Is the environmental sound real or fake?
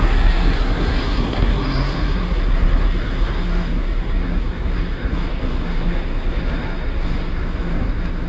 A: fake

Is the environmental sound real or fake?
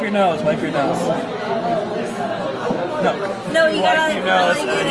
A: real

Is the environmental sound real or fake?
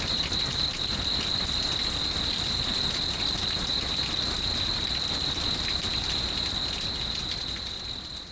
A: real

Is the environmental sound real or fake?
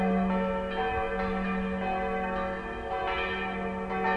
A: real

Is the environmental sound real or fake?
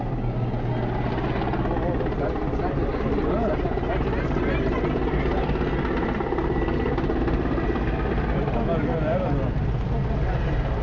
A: real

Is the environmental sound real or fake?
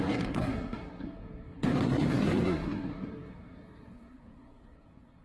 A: fake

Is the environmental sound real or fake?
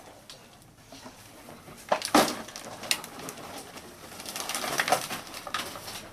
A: real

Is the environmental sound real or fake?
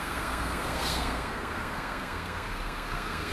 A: fake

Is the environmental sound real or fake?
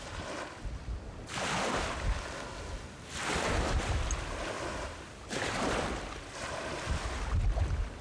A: real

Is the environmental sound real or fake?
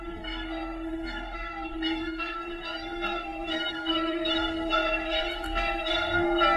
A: fake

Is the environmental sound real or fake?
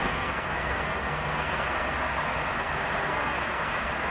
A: fake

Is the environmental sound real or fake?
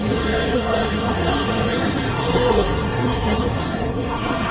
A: fake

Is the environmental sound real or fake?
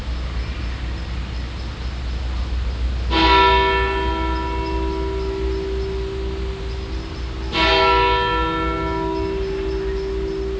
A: real